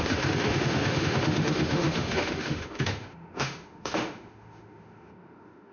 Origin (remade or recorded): remade